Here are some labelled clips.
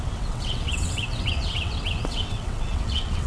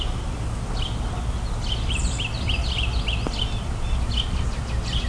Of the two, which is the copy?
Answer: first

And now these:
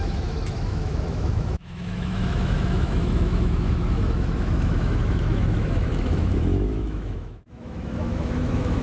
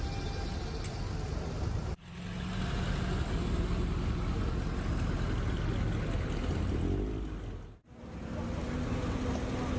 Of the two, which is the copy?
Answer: first